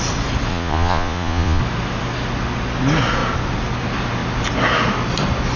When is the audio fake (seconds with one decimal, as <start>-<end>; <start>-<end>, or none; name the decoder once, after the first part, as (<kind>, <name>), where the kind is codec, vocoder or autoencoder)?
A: 0.5-1.6 (vocoder, Vocos)